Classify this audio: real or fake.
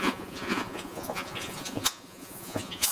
fake